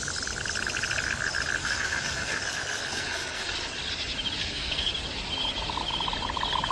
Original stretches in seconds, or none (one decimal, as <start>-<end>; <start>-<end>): 0.0-1.6; 2.4-2.9; 3.5-4.4; 4.9-6.7